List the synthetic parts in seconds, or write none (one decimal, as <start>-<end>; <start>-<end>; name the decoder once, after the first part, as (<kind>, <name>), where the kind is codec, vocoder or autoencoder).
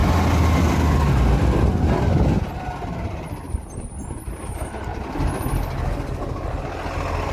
none